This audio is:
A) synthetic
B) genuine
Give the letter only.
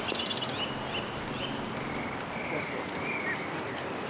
B